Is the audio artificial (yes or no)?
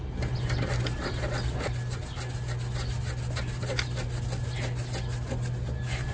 no